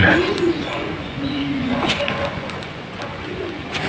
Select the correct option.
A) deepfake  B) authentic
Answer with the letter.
A